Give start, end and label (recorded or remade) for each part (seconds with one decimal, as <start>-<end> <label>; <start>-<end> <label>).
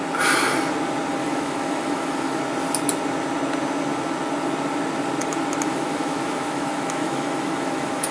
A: 0.0-1.2 recorded; 1.2-2.4 remade; 2.4-5.7 recorded; 5.7-8.1 remade